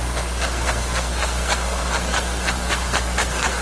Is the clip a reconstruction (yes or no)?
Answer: yes